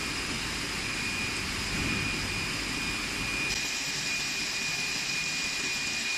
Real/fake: real